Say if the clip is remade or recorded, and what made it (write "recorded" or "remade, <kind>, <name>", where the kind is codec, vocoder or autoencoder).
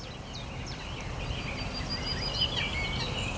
recorded